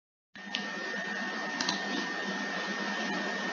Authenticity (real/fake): real